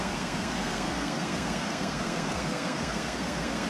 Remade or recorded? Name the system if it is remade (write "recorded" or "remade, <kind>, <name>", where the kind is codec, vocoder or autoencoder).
remade, codec, SNAC